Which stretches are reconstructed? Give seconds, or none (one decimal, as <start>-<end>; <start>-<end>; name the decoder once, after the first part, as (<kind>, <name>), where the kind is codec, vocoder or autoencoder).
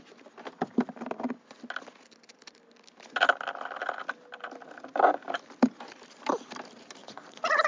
7.0-7.7 (vocoder, Vocos)